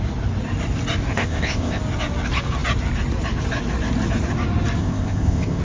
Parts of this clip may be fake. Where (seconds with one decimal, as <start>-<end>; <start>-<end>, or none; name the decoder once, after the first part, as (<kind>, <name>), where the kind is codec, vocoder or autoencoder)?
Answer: 1.1-1.8 (codec, ZipCodec); 4.8-5.6